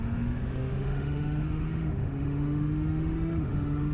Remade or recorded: remade